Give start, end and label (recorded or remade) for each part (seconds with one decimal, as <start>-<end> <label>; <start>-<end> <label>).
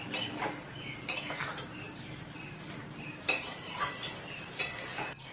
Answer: 0.0-1.4 recorded; 1.4-4.6 remade; 4.6-5.3 recorded